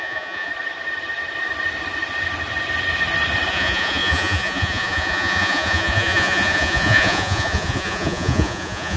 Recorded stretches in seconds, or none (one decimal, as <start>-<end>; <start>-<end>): 0.5-3.5